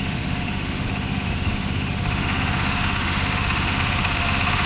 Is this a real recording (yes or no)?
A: no